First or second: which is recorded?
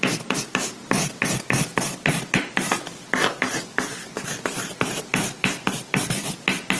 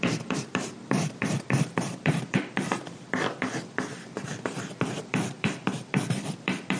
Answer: first